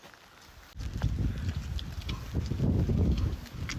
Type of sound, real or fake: real